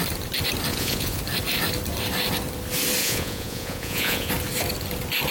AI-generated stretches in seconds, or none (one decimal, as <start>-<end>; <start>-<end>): 0.7-1.2; 3.0-4.3